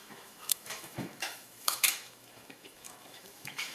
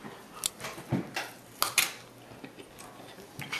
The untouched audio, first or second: second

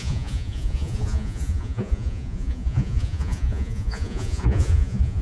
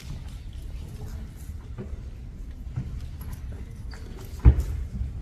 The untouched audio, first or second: second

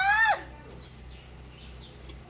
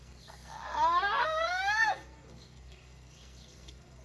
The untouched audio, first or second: first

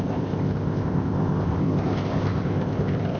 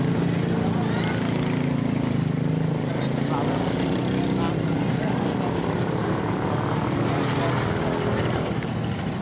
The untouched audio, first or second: second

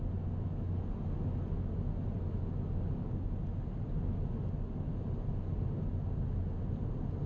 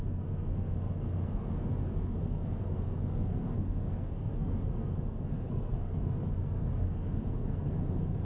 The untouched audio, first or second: first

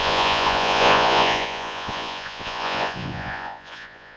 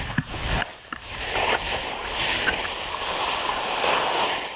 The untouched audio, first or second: second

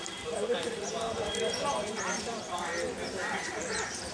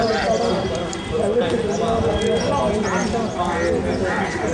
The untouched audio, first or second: second